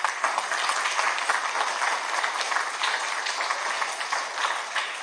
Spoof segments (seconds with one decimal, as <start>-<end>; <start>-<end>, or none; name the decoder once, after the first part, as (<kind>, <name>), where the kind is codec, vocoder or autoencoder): none